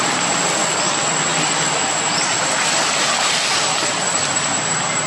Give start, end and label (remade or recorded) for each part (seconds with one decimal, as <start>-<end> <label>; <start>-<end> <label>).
0.0-3.8 recorded; 3.8-5.1 remade